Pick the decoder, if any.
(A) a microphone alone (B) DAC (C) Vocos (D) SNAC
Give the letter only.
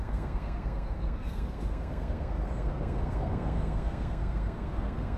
D